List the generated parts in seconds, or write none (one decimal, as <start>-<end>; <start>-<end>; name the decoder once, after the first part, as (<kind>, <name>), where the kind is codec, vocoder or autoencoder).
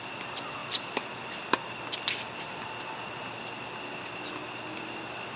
none